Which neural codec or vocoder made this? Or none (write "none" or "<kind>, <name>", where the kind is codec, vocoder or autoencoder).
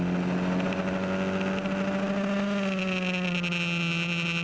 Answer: none